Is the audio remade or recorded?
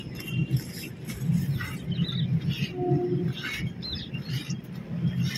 recorded